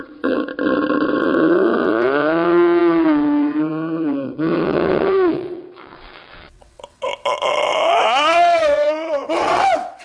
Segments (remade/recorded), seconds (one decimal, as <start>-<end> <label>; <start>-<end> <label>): 0.0-0.5 remade; 0.5-1.2 recorded; 1.2-7.1 remade; 7.1-8.0 recorded; 8.0-10.0 remade